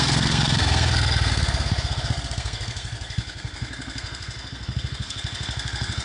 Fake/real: fake